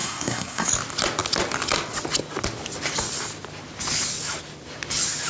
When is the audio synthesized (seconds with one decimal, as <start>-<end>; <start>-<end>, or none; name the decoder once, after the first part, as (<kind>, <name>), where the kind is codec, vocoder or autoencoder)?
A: 0.0-0.7 (codec, SNAC)